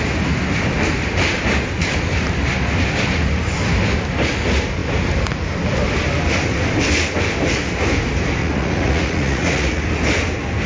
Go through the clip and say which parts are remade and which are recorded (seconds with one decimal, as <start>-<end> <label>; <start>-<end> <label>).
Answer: 0.0-8.4 recorded; 8.4-9.8 remade; 9.8-10.7 recorded